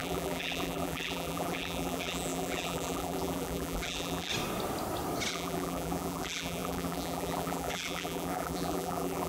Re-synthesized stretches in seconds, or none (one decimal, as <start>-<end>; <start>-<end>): 0.0-4.3; 5.3-9.3